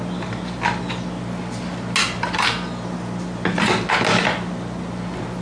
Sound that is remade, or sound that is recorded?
recorded